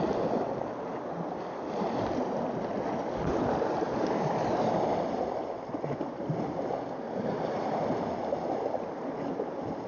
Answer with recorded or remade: recorded